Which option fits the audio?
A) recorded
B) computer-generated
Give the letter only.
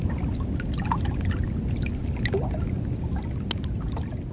A